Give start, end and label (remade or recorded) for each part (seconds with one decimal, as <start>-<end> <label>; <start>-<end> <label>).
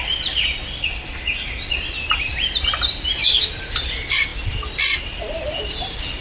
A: 0.0-6.2 recorded